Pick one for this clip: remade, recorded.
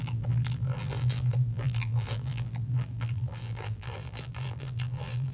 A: remade